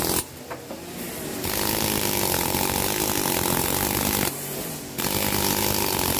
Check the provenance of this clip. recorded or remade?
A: recorded